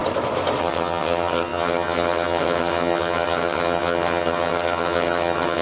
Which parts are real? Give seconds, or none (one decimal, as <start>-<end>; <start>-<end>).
0.0-0.6